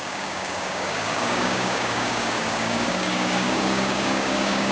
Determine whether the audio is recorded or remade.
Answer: remade